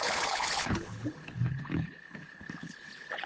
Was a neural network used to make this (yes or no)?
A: yes